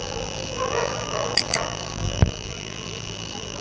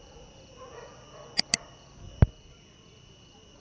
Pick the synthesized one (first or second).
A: first